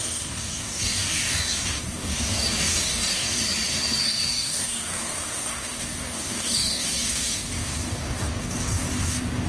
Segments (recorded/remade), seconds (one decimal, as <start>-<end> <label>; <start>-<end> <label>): 0.0-3.4 remade; 3.4-4.0 recorded; 4.0-9.5 remade